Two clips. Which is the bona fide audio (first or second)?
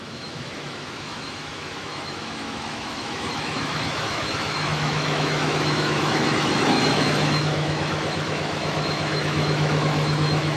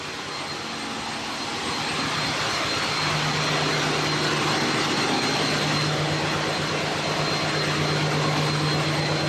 second